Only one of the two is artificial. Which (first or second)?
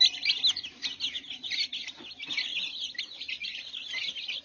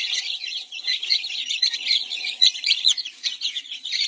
second